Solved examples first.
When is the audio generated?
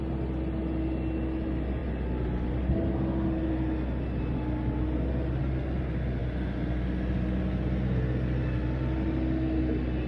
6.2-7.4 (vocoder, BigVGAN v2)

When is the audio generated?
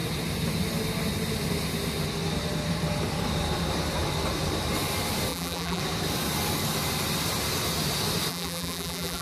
5.3-5.8 (vocoder, BigVGAN v2); 8.3-9.2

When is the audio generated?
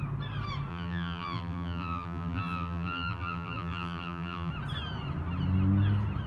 0.7-4.5 (vocoder, BigVGAN v2)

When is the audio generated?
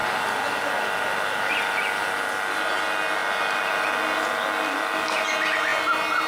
0.0-1.5 (vocoder, BigVGAN v2)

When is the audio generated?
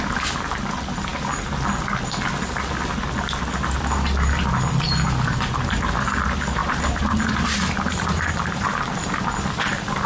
6.6-9.2 (vocoder, BigVGAN v2)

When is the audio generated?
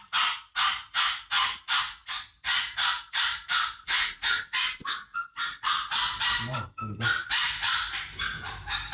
1.5-2.0 (vocoder, BigVGAN v2); 2.6-5.1; 6.2-8.9